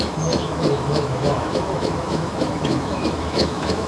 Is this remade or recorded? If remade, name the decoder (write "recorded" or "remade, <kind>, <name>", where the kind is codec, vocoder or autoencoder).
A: remade, autoencoder, DAC-VAE